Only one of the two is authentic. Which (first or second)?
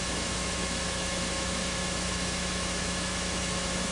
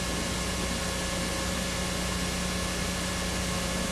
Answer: second